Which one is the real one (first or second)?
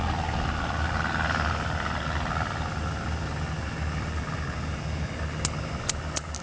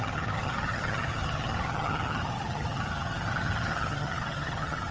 first